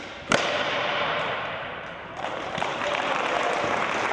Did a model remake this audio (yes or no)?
yes